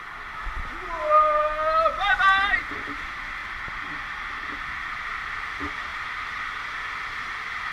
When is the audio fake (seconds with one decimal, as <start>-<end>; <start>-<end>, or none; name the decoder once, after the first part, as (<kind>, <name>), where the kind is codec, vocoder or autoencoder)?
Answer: 5.9-6.6 (vocoder, BigVGAN v2)